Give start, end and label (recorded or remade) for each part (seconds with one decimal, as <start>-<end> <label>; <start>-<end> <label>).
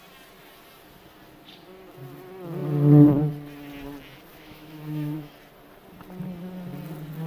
0.0-4.3 recorded; 4.3-5.3 remade; 5.3-7.3 recorded